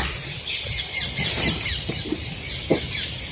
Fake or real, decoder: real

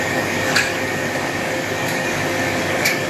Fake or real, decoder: fake, codec, DAC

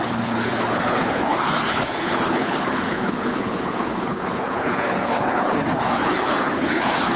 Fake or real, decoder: fake, codec, HILCodec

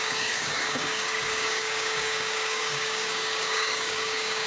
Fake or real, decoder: fake, codec, DAC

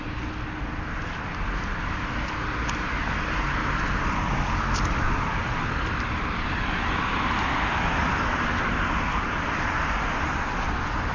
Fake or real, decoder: real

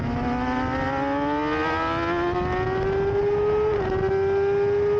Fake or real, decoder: real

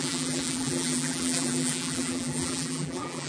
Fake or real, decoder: fake, vocoder, BigVGAN v2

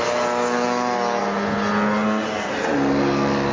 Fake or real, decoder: real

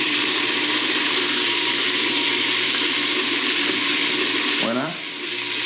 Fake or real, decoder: fake, vocoder, BigVGAN v2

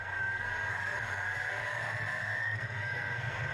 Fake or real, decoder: fake, codec, SNAC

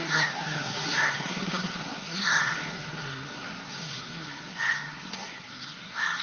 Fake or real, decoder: fake, codec, SNAC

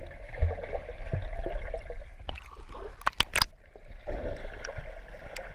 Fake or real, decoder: real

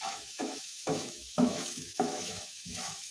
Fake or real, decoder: fake, autoencoder, DAC-VAE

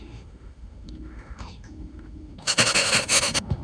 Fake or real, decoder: fake, autoencoder, DAC-VAE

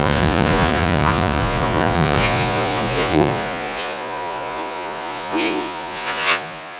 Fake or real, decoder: fake, vocoder, Vocos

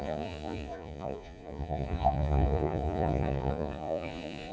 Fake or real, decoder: fake, vocoder, Vocos